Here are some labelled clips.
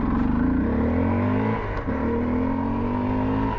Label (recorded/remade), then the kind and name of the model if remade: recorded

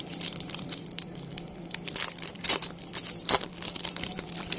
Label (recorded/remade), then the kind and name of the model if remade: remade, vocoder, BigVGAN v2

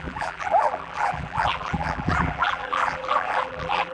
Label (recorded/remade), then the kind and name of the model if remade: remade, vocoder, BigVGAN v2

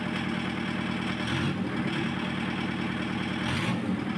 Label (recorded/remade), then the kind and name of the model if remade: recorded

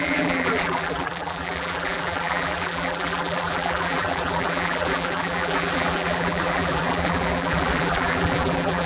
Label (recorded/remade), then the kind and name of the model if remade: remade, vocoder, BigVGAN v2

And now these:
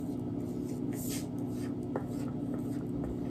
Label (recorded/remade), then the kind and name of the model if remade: recorded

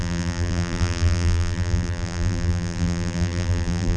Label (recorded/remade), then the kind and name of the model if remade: remade, vocoder, BigVGAN v2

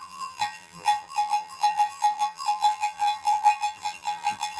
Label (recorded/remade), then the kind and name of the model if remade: remade, vocoder, BigVGAN v2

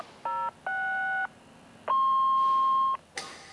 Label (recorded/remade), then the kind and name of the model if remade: recorded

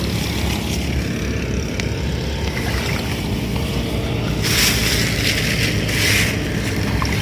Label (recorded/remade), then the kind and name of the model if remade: recorded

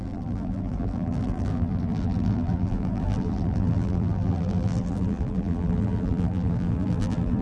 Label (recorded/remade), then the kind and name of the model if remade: remade, vocoder, BigVGAN v2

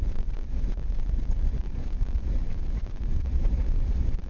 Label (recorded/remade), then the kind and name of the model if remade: remade, vocoder, BigVGAN v2